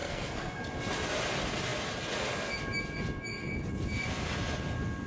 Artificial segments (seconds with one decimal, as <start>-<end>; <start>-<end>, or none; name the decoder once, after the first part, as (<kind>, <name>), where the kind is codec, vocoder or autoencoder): 0.0-0.7 (codec, SNAC)